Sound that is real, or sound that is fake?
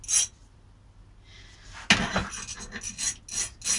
real